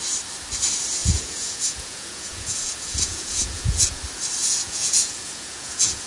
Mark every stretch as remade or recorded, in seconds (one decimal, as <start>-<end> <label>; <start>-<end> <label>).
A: 0.0-1.0 recorded; 1.0-4.0 remade; 4.0-4.4 recorded; 4.4-6.1 remade